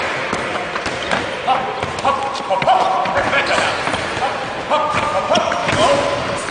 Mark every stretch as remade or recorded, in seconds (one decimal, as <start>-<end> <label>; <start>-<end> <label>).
0.0-6.5 recorded